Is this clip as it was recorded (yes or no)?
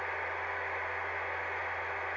yes